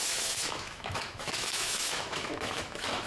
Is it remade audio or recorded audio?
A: remade